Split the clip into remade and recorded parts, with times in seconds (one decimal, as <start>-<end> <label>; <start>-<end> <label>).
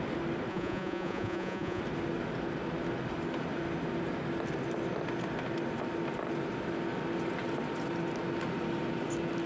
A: 0.0-0.5 recorded; 0.5-1.8 remade; 1.8-9.5 recorded